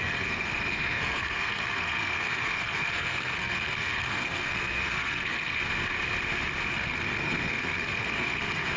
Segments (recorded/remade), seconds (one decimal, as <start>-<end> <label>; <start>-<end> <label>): 0.0-5.6 remade; 5.6-6.7 recorded; 6.7-8.8 remade